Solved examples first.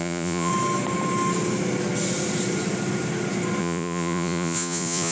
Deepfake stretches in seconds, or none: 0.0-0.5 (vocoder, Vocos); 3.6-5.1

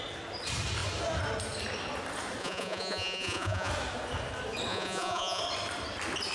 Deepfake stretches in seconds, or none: 2.4-3.7 (vocoder, Vocos); 4.7-5.4

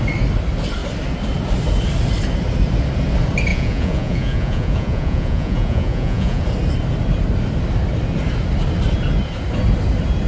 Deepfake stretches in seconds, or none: 3.5-6.4 (vocoder, Vocos)

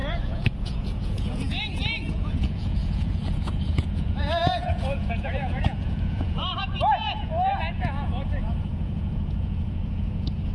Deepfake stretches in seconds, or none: 0.0-10.5 (vocoder, Vocos)

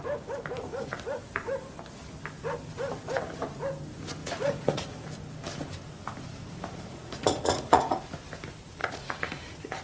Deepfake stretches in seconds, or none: 4.2-4.9 (vocoder, Vocos); 6.7-8.0; 8.8-9.8

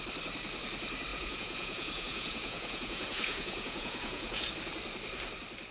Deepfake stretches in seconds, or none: 1.1-4.5 (vocoder, Vocos)

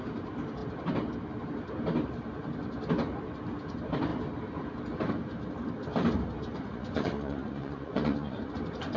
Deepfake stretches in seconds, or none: 6.5-8.5 (vocoder, Vocos)

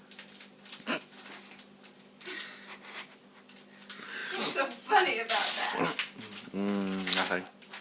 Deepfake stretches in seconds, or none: none